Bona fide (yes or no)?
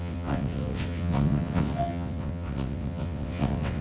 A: no